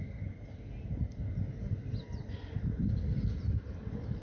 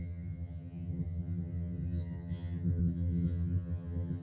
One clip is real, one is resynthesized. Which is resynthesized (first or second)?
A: second